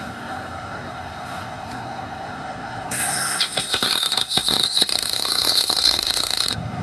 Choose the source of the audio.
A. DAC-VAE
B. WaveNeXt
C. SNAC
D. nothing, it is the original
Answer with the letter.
C